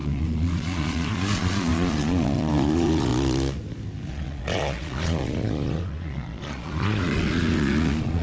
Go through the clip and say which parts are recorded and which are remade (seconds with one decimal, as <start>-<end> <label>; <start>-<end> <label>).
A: 0.0-3.1 remade; 3.1-4.1 recorded; 4.1-8.2 remade